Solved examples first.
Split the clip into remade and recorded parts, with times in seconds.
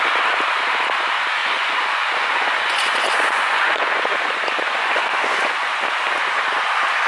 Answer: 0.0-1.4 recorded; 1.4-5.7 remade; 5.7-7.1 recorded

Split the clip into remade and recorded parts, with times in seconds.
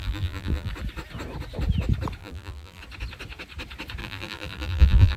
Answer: 0.0-0.7 remade; 0.7-2.2 recorded; 2.2-2.8 remade; 2.8-4.0 recorded; 4.0-5.2 remade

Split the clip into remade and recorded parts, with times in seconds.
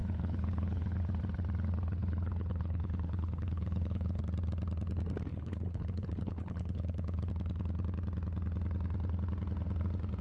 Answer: 0.0-1.0 remade; 1.0-2.0 recorded; 2.0-4.2 remade; 4.2-5.3 recorded; 5.3-7.3 remade; 7.3-10.2 recorded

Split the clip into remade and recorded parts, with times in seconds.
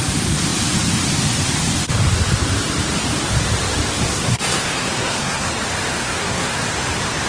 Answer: 0.0-4.1 recorded; 4.1-5.5 remade; 5.5-6.0 recorded; 6.0-6.7 remade; 6.7-7.3 recorded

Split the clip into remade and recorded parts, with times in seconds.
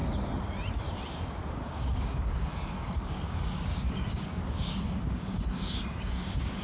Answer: 0.0-1.5 recorded; 1.5-6.6 remade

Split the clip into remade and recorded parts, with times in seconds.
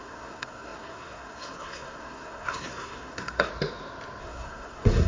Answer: 0.0-3.5 remade; 3.5-4.2 recorded; 4.2-5.1 remade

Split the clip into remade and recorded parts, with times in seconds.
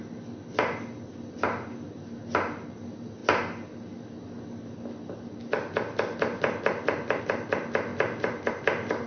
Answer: 0.0-9.1 recorded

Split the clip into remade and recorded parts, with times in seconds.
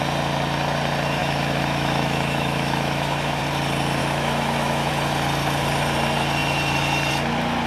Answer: 0.0-1.2 recorded; 1.2-3.4 remade; 3.4-4.0 recorded; 4.0-4.9 remade; 4.9-7.7 recorded